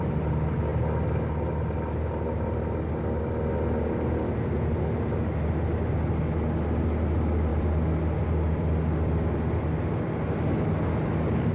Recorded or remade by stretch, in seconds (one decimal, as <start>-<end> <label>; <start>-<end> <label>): 0.0-7.5 recorded; 7.5-9.8 remade; 9.8-11.5 recorded